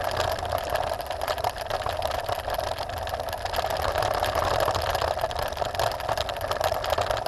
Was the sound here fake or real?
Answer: real